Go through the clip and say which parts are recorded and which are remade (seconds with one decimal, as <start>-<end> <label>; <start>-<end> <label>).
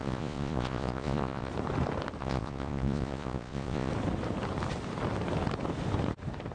0.0-1.5 remade; 1.5-2.2 recorded; 2.2-3.9 remade; 3.9-6.5 recorded